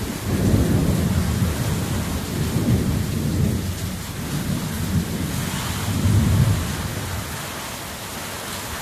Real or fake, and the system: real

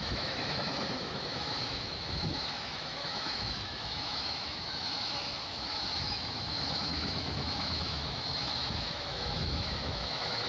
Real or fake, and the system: fake, autoencoder, DAC-VAE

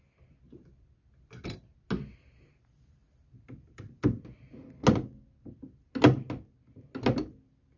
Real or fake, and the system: real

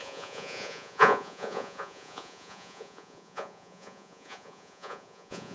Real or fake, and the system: fake, vocoder, Vocos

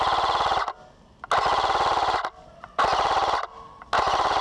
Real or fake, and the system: real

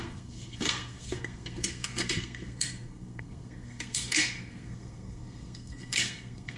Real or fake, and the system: fake, codec, SNAC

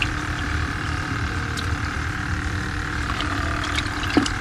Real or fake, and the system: fake, vocoder, BigVGAN v2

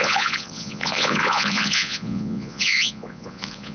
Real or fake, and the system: fake, vocoder, Vocos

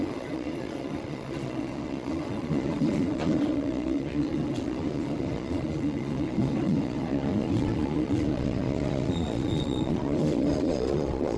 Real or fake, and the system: fake, vocoder, Vocos